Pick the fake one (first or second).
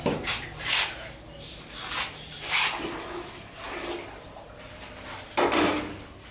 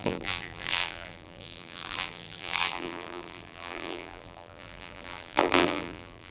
second